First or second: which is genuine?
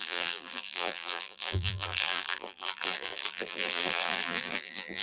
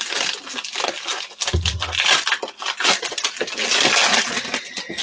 second